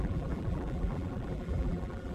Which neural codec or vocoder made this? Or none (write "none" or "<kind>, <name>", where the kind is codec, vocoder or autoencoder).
vocoder, BigVGAN v2